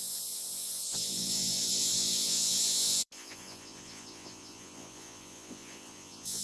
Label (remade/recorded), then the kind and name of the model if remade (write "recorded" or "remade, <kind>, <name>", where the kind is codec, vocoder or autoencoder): remade, vocoder, Vocos